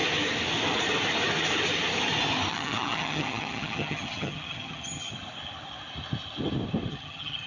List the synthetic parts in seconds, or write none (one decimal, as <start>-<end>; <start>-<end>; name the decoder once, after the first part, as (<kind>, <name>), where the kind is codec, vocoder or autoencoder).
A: 2.5-5.1 (vocoder, HiFi-GAN); 6.9-7.5